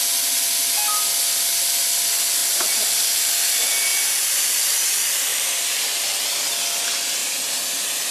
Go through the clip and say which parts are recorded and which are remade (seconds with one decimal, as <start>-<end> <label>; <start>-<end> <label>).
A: 0.0-2.4 recorded; 2.4-3.3 remade; 3.3-3.9 recorded; 3.9-4.8 remade; 4.8-5.3 recorded; 5.3-6.2 remade; 6.2-7.2 recorded; 7.2-8.1 remade